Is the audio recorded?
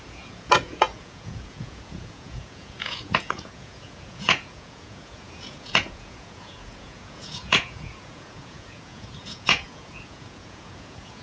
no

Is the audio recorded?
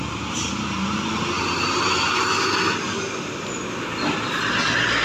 yes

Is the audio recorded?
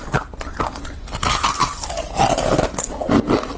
yes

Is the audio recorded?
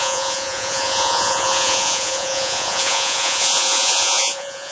no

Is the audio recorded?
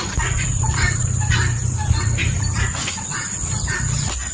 no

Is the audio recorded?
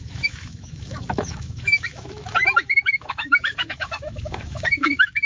no